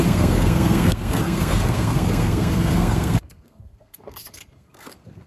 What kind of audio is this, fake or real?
fake